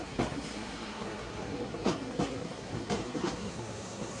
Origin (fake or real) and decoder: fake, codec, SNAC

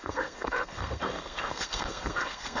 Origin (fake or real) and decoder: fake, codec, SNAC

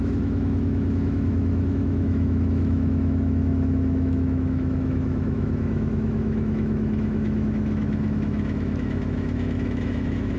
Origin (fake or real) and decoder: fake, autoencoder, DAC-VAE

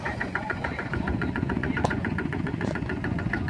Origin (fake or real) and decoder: fake, vocoder, Vocos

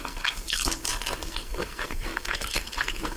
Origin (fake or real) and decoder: fake, codec, SNAC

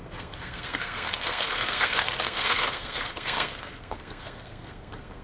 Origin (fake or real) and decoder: fake, codec, SNAC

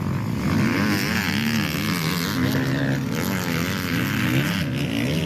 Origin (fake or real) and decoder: real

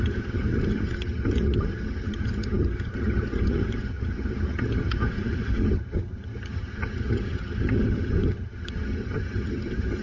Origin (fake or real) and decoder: fake, vocoder, HiFi-GAN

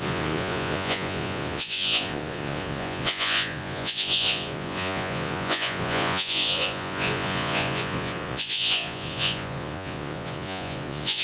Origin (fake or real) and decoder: fake, vocoder, Vocos